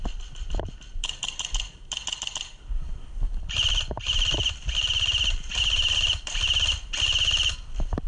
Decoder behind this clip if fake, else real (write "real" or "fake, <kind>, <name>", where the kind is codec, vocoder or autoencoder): fake, vocoder, BigVGAN v2